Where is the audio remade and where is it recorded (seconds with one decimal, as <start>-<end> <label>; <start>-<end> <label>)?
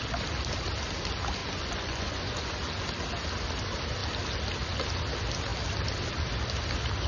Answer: 0.0-1.4 recorded; 1.4-2.5 remade; 2.5-7.1 recorded